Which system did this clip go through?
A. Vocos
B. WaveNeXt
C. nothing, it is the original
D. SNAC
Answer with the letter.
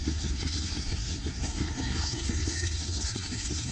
D